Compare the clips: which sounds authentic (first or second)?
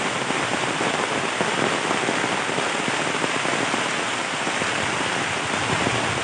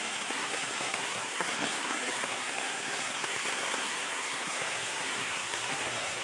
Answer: first